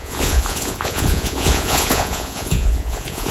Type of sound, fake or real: fake